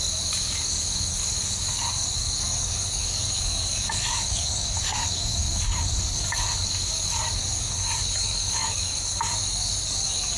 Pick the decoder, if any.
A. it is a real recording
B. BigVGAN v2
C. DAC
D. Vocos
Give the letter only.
C